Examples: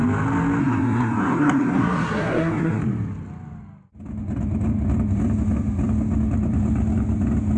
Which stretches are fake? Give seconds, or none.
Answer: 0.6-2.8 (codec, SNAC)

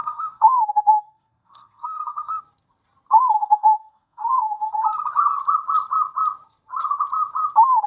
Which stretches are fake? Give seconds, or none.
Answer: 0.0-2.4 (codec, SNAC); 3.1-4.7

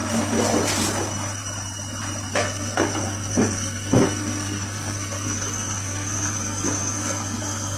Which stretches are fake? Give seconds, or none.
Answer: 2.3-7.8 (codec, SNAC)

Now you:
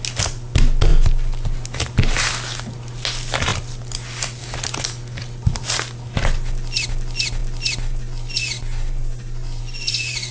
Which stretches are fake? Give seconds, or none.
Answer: none

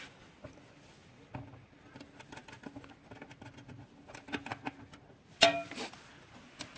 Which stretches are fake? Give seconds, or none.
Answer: none

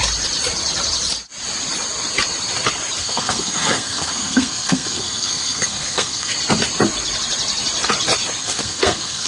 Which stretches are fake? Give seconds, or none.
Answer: 3.0-6.3 (codec, SNAC); 8.4-9.3

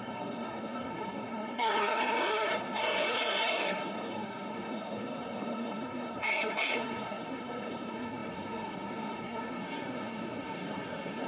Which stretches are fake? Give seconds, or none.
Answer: 0.0-11.3 (codec, SNAC)

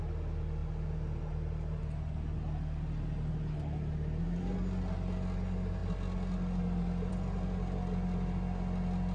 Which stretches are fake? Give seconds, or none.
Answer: none